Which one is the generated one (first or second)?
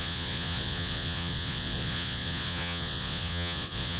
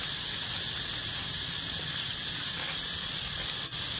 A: first